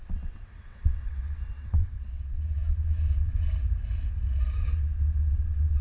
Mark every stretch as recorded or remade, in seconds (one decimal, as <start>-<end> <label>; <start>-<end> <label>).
0.0-3.5 remade; 3.5-4.6 recorded; 4.6-5.8 remade